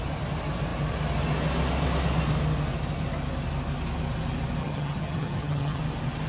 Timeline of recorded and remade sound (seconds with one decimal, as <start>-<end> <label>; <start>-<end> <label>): 0.0-4.6 recorded; 4.6-5.8 remade; 5.8-6.3 recorded